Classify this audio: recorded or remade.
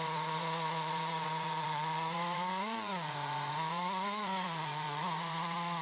remade